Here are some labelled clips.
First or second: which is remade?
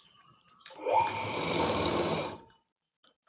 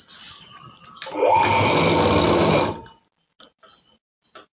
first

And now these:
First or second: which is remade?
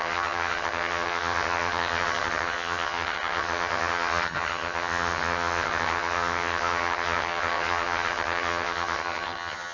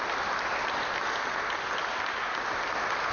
first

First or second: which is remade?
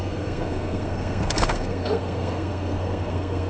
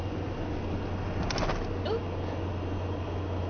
first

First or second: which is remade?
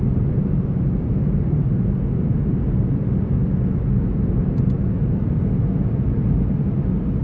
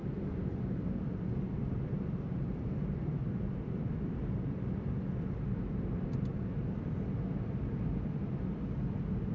second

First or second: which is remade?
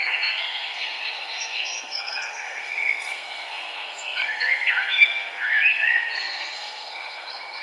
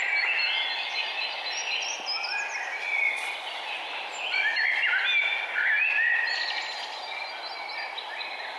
first